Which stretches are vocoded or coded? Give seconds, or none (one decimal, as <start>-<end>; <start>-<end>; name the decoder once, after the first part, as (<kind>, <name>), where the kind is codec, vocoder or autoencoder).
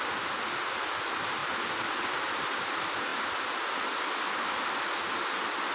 none